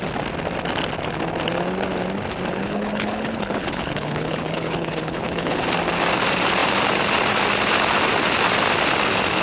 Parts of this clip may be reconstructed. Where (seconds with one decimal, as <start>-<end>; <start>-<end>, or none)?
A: 2.5-5.6